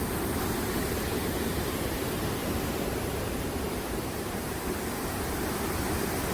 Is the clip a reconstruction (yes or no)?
yes